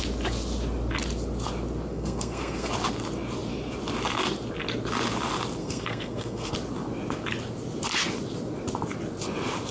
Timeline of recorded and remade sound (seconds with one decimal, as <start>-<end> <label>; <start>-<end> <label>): 0.0-1.9 recorded; 1.9-2.7 remade; 2.7-5.6 recorded; 5.6-6.5 remade; 6.5-9.7 recorded